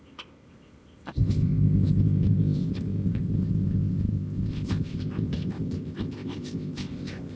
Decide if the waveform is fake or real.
fake